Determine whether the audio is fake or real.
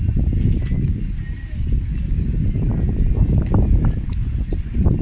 real